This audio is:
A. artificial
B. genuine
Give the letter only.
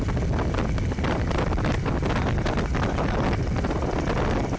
B